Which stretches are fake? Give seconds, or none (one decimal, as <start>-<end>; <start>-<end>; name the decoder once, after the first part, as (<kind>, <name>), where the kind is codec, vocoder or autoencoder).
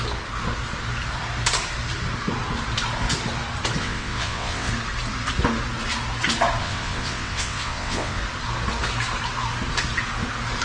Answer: 3.8-4.7 (vocoder, WaveNeXt); 6.6-8.2